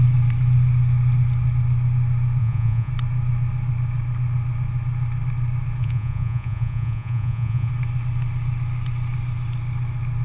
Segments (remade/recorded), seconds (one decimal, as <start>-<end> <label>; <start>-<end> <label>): 0.0-2.4 recorded; 2.4-2.9 remade; 2.9-5.8 recorded; 5.8-7.7 remade; 7.7-10.2 recorded

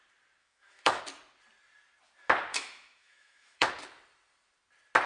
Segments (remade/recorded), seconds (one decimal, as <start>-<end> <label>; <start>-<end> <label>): 0.0-0.4 recorded; 0.4-1.0 remade; 1.0-2.5 recorded; 2.5-3.7 remade; 3.7-5.1 recorded

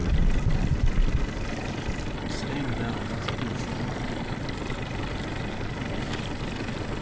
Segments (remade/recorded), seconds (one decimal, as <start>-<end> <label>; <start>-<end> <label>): 0.0-7.0 recorded

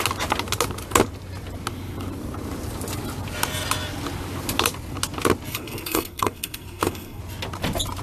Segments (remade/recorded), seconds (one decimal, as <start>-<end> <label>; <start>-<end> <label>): 0.0-5.5 recorded; 5.5-7.2 remade; 7.2-8.0 recorded

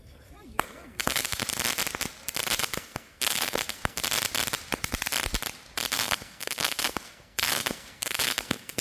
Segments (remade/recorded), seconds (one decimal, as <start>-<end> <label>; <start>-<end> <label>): 0.0-1.4 remade; 1.4-2.6 recorded; 2.6-4.0 remade; 4.0-5.9 recorded; 5.9-8.8 remade

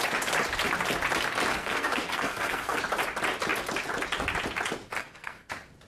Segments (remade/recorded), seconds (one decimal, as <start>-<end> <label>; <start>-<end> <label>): 0.0-1.5 recorded; 1.5-2.8 remade; 2.8-5.0 recorded; 5.0-5.5 remade; 5.5-5.9 recorded

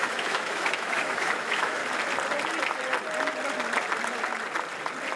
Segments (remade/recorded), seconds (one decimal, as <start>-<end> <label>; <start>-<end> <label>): 0.0-1.8 remade; 1.8-5.2 recorded

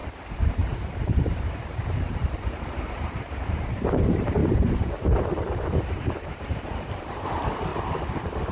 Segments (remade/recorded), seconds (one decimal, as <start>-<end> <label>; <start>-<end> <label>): 0.0-7.7 remade; 7.7-8.5 recorded